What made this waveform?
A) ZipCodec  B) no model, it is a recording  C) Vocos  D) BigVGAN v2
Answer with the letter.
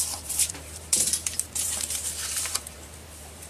D